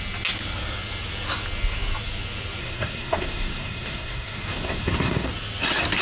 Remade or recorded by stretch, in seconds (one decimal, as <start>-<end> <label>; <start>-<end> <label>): 0.0-2.6 recorded; 2.6-5.3 remade; 5.3-6.0 recorded